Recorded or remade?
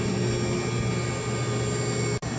recorded